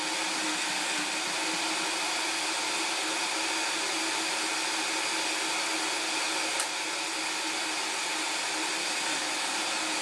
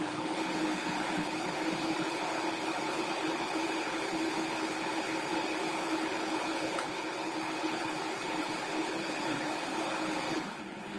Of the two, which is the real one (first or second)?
first